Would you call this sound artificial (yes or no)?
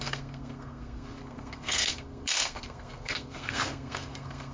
yes